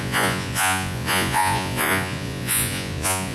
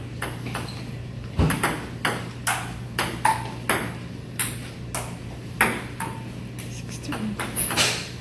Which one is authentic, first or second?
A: second